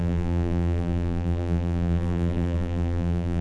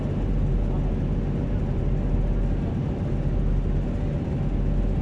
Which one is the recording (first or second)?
second